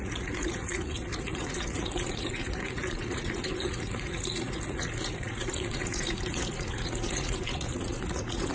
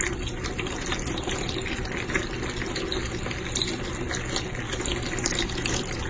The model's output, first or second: first